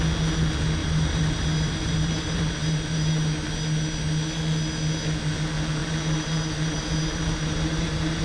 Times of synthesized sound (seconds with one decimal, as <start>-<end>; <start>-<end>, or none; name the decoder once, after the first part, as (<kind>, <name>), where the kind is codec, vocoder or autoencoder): 0.8-3.1 (vocoder, BigVGAN v2); 5.8-8.2

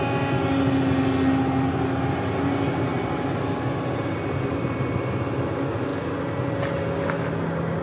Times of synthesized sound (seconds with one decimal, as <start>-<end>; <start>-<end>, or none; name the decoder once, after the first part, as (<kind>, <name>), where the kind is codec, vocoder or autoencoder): none